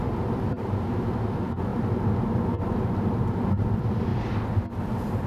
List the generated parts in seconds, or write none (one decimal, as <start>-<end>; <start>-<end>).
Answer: 0.0-4.1